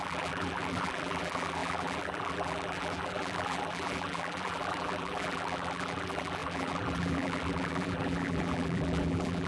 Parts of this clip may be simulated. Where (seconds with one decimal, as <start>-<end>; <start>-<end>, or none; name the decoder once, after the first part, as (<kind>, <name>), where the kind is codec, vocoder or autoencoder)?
0.0-9.5 (vocoder, BigVGAN v2)